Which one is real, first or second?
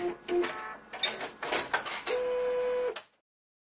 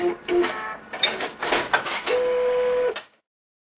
first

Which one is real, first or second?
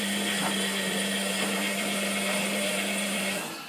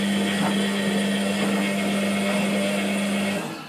second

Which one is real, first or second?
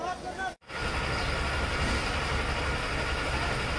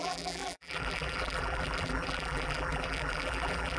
first